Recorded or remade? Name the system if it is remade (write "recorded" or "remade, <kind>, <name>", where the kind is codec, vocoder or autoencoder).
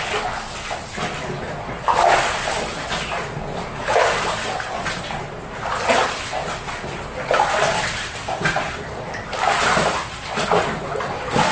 recorded